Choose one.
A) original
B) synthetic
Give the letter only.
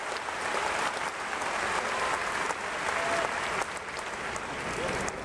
A